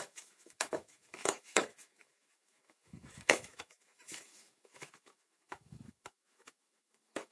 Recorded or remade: remade